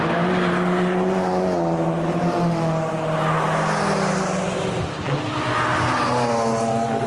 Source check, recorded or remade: recorded